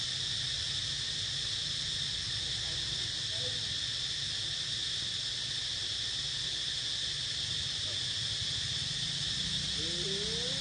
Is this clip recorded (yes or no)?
yes